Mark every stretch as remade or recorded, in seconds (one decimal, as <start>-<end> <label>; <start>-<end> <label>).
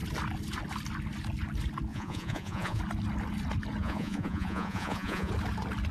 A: 0.0-1.9 recorded; 1.9-2.8 remade; 2.8-3.8 recorded; 3.8-5.3 remade; 5.3-5.9 recorded